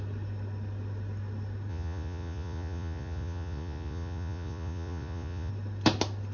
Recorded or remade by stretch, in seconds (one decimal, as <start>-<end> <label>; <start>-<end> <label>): 0.0-1.7 recorded; 1.7-5.5 remade; 5.5-6.3 recorded